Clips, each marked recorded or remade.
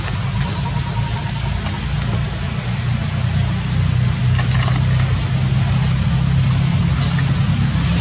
recorded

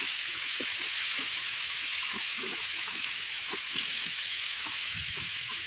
remade